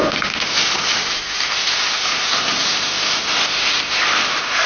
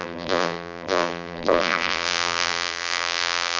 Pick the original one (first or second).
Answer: first